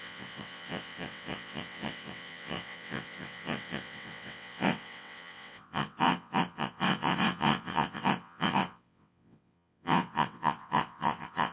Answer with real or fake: fake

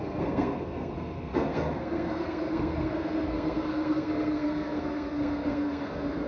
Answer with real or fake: fake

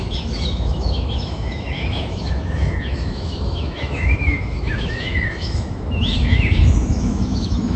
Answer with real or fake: fake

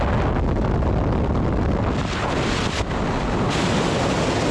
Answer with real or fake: real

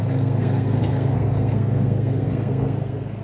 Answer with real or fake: fake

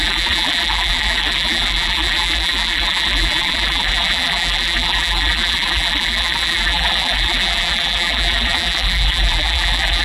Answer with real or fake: fake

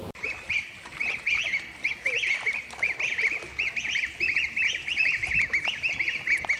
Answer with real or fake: fake